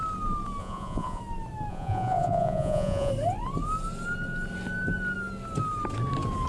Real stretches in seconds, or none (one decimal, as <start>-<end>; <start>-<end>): 0.0-0.6; 1.2-1.7; 3.1-6.5